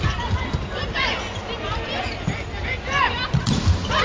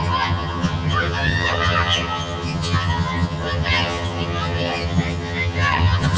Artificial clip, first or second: second